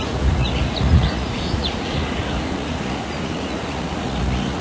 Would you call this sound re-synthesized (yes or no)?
yes